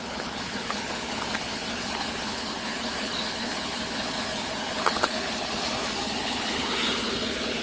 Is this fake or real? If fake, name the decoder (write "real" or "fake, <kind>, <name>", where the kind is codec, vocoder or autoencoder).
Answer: fake, codec, HILCodec